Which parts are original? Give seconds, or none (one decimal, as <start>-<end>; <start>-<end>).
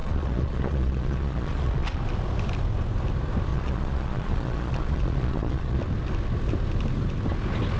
2.0-3.5; 5.8-7.8